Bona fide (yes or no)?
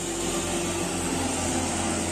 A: yes